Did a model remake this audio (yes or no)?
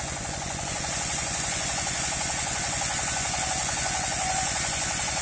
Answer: yes